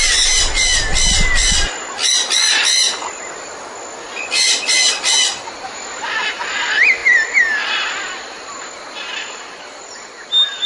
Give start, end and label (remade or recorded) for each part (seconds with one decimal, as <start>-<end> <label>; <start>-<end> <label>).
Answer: 0.0-10.7 recorded